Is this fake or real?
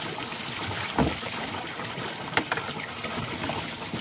real